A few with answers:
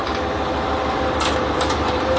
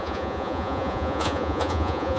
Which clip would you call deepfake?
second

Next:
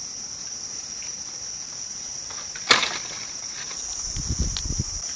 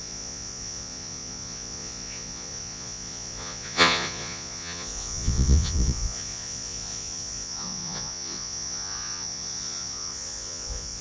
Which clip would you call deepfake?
second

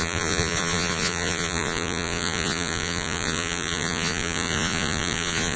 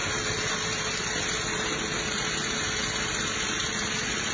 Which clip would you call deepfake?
first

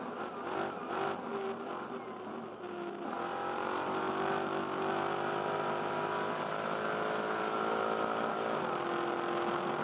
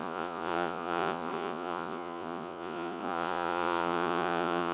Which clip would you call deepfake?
second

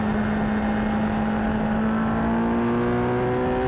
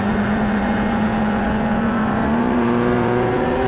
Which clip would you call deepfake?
second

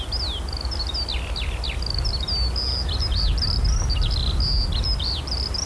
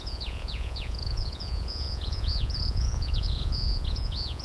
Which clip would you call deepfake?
second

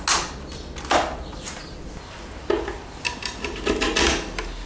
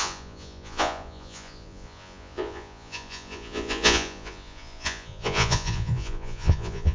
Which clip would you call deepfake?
second